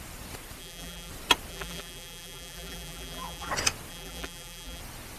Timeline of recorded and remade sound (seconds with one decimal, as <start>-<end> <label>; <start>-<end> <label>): 0.0-0.6 recorded; 0.6-1.1 remade; 1.1-1.5 recorded; 1.5-3.5 remade; 3.5-3.9 recorded; 3.9-4.8 remade; 4.8-5.2 recorded